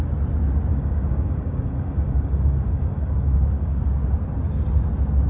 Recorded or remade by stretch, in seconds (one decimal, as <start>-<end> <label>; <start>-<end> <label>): 0.0-0.7 recorded; 0.7-3.8 remade; 3.8-5.3 recorded